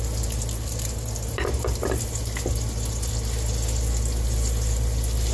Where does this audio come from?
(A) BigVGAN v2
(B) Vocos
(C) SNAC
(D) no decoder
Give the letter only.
D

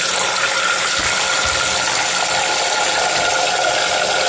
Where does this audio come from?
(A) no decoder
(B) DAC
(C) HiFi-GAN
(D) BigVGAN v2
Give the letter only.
A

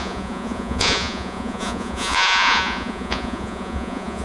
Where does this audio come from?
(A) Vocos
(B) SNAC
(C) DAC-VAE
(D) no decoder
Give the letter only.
A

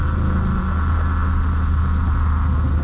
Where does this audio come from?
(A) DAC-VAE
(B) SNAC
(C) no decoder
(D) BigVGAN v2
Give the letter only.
C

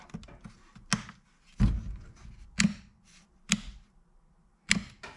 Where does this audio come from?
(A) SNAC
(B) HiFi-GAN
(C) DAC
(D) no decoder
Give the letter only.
D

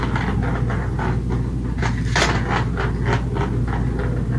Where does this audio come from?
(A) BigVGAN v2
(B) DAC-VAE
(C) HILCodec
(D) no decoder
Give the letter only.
D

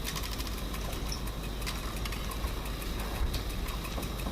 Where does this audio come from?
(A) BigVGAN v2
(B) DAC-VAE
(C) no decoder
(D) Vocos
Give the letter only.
C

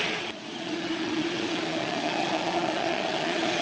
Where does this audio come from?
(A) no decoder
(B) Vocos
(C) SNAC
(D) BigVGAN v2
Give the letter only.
B